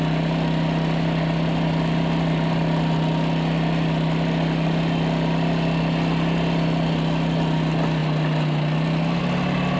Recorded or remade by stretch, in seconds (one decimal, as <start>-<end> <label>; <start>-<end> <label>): 0.0-9.8 recorded